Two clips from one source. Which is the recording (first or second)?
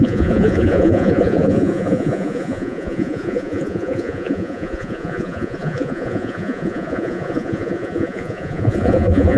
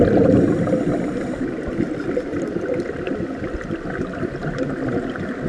second